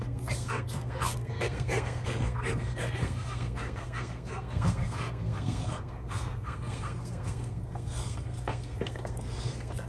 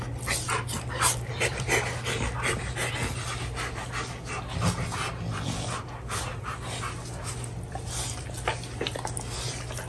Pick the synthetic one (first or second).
first